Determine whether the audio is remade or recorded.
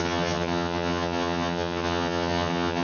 remade